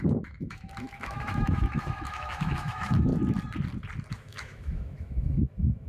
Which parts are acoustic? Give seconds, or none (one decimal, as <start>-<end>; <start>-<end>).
3.1-4.1